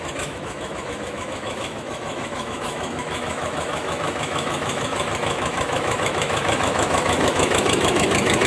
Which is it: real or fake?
fake